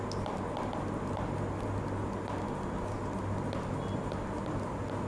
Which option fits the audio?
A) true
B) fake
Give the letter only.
A